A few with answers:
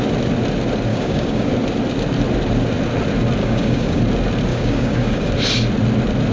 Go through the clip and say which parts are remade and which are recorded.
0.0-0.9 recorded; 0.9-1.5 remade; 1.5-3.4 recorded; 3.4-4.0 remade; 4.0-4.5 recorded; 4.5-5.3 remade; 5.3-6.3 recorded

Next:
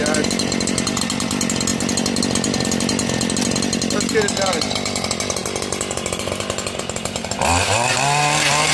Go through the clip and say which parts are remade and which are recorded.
0.0-8.7 recorded

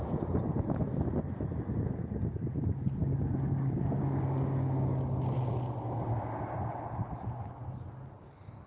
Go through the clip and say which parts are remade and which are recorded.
0.0-3.0 recorded; 3.0-5.5 remade; 5.5-8.7 recorded

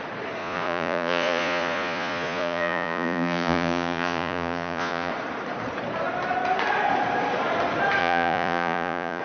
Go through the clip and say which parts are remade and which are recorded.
0.0-0.4 recorded; 0.4-5.1 remade; 5.1-8.0 recorded; 8.0-9.2 remade

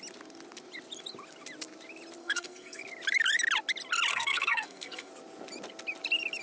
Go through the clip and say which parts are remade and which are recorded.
0.0-2.2 recorded; 2.2-2.8 remade; 2.8-4.1 recorded; 4.1-5.1 remade; 5.1-6.4 recorded

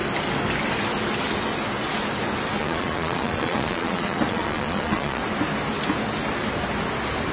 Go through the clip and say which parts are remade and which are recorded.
0.0-2.6 recorded; 2.6-5.2 remade; 5.2-7.3 recorded

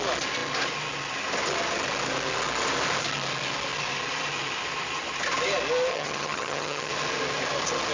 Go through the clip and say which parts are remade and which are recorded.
0.0-5.9 recorded; 5.9-6.9 remade; 6.9-7.9 recorded

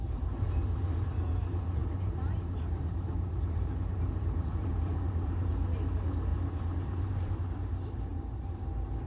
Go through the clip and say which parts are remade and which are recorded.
0.0-1.8 recorded; 1.8-5.4 remade; 5.4-6.3 recorded; 6.3-7.3 remade; 7.3-8.1 recorded; 8.1-8.6 remade; 8.6-9.1 recorded